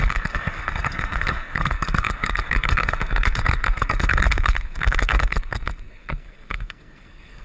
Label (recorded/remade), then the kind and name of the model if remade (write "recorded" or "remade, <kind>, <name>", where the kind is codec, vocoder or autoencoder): remade, codec, SNAC